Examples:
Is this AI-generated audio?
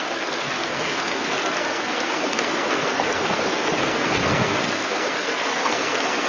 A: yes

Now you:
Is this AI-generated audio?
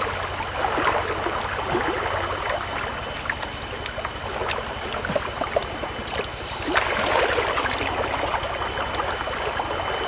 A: no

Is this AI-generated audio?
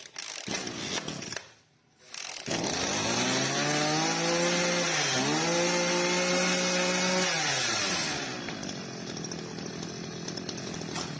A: no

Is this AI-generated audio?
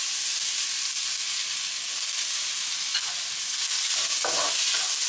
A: no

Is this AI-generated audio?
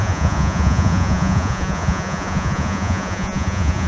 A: yes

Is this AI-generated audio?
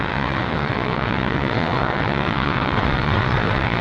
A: yes